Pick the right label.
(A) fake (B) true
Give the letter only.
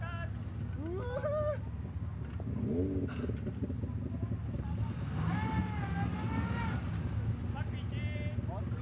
B